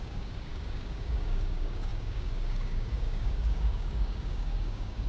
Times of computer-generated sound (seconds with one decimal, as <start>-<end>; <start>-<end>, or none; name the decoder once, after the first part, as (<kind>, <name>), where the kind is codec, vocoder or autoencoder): 0.0-5.1 (codec, DAC)